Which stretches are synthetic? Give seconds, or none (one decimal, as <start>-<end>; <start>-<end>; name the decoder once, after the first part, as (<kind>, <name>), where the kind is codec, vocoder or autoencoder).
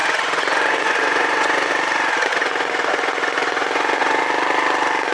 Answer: 0.0-1.7 (vocoder, Vocos); 2.3-4.2